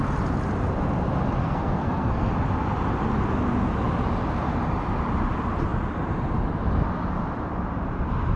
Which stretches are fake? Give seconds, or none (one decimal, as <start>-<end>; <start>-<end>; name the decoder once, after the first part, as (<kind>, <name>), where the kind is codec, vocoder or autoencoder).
1.4-2.3 (codec, SNAC)